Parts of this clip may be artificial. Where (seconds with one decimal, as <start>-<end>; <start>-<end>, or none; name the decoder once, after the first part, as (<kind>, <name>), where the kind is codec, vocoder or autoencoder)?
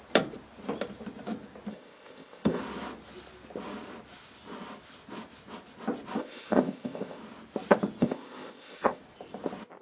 1.7-2.6 (codec, ZipCodec); 6.2-7.2; 8.0-9.0